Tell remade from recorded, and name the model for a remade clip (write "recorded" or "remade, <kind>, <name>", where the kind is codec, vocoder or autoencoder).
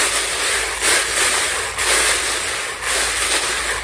recorded